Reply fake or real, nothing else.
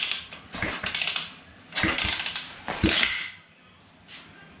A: real